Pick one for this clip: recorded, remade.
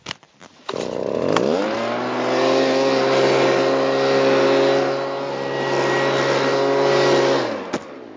recorded